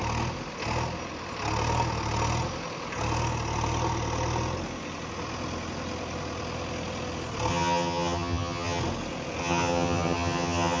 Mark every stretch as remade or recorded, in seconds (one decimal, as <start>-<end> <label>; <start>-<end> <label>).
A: 0.0-7.5 recorded; 7.5-8.8 remade; 8.8-9.4 recorded; 9.4-10.8 remade